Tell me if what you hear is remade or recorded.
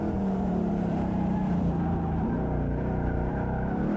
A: remade